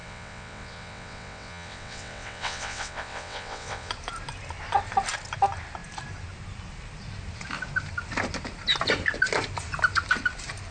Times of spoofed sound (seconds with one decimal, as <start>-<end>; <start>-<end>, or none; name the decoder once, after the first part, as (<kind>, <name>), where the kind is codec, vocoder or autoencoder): 0.0-3.9 (vocoder, WaveNeXt)